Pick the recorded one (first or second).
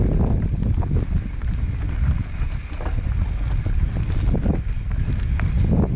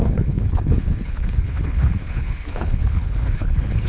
first